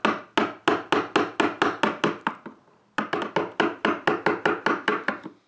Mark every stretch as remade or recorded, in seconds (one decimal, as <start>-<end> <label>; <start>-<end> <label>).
0.0-5.5 recorded